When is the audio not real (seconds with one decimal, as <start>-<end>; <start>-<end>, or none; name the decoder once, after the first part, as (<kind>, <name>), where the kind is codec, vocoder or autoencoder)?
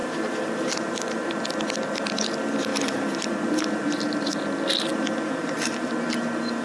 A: 0.0-1.4 (vocoder, BigVGAN v2); 2.7-4.4; 4.9-5.9